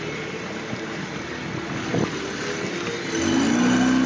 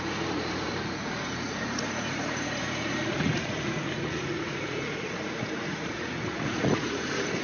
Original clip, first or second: first